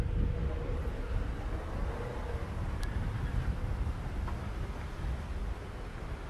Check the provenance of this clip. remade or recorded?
recorded